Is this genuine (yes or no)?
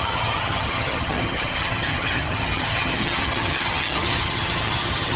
no